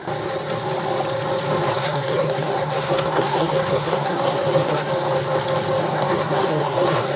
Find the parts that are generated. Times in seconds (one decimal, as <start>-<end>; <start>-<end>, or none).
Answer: 1.7-4.9; 5.8-7.2